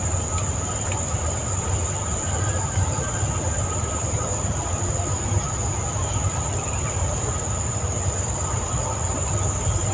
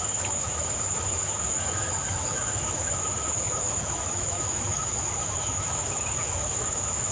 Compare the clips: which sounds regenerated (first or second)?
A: second